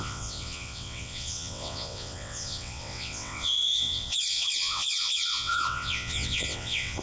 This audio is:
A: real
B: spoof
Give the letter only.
B